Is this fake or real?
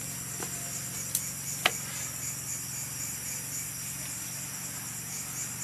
real